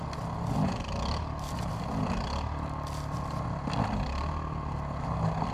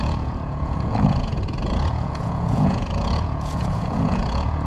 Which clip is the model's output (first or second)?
second